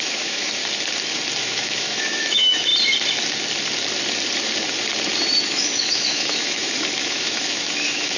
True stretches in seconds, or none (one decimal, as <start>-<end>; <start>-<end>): 0.6-1.4; 2.7-5.4